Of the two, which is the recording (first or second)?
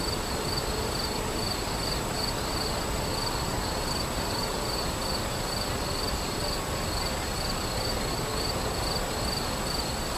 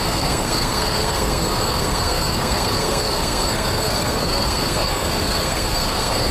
first